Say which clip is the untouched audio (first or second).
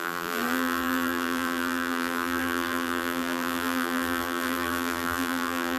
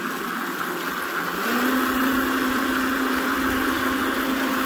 second